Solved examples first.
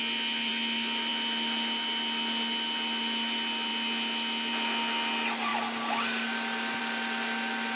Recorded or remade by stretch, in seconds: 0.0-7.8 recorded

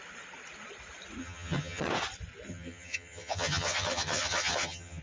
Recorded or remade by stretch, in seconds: 0.0-1.2 recorded; 1.2-1.9 remade; 1.9-2.5 recorded; 2.5-5.0 remade

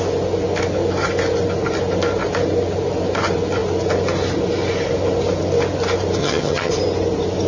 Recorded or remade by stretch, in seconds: 0.0-6.2 recorded; 6.2-6.7 remade; 6.7-7.5 recorded